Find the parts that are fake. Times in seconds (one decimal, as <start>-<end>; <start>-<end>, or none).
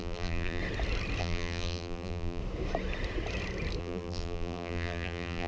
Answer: 0.0-0.6; 1.2-2.4; 3.8-5.5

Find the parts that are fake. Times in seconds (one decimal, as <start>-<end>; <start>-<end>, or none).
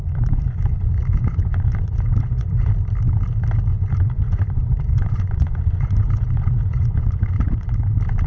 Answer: 0.0-2.7; 3.7-7.7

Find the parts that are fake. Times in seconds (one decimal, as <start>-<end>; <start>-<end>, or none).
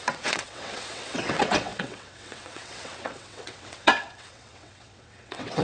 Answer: 0.0-5.6